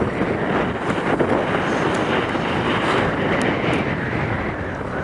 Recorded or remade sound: recorded